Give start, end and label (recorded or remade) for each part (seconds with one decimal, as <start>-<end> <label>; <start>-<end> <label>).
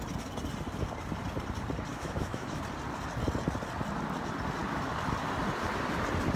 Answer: 0.0-1.9 recorded; 1.9-2.6 remade; 2.6-6.4 recorded